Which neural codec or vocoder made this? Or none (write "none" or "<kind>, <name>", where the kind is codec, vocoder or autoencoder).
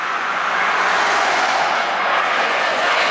vocoder, Vocos